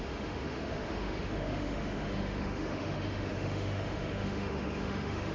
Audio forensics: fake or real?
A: fake